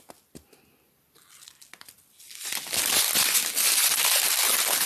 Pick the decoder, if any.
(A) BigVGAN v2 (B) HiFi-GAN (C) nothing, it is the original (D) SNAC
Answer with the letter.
C